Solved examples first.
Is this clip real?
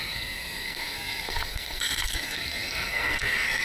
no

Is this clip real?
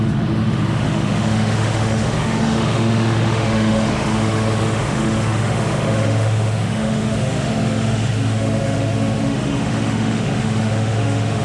no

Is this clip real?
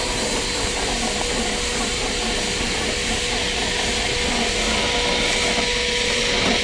yes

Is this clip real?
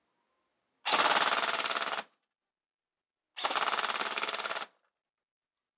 yes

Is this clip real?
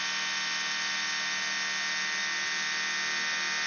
yes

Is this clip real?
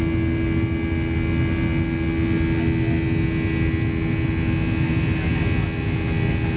yes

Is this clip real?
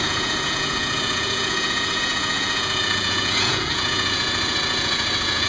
no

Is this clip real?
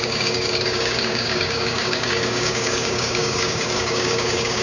no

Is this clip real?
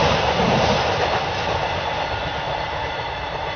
yes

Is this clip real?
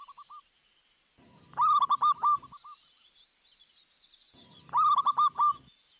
yes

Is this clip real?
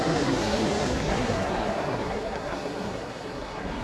no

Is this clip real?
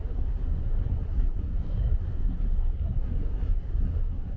no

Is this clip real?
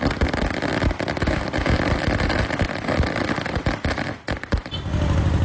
yes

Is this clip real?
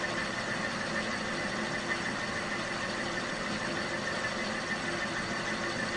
yes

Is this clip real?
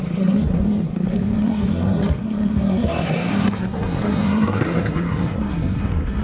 no